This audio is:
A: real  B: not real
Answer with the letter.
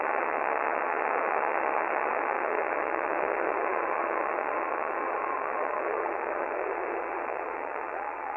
B